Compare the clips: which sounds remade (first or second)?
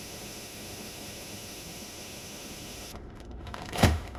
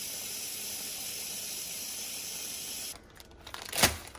first